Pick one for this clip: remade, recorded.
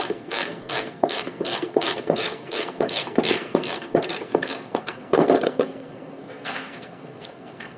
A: remade